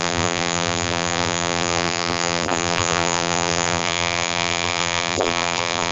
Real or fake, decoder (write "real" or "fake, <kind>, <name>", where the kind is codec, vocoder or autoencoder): fake, vocoder, BigVGAN v2